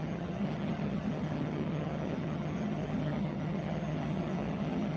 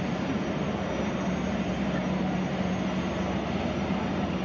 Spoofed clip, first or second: first